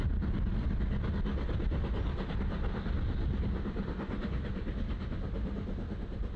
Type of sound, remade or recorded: recorded